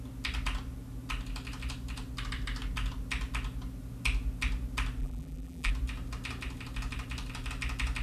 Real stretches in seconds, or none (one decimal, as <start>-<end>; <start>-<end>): 0.0-5.0; 5.7-8.0